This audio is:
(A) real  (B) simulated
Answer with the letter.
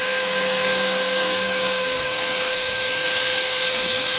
B